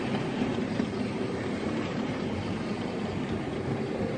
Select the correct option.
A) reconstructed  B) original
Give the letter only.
A